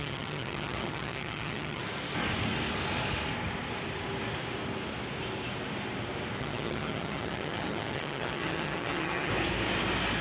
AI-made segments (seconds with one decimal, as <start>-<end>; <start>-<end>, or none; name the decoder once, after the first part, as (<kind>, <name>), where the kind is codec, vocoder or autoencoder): 0.0-1.8 (vocoder, HiFi-GAN); 6.4-9.3